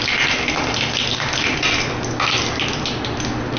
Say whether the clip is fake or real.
real